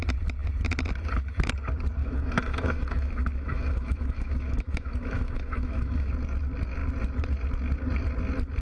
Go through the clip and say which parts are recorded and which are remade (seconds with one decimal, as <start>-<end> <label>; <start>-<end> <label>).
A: 0.0-2.0 recorded; 2.0-6.1 remade; 6.1-8.6 recorded